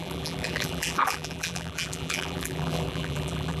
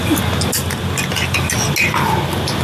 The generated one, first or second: first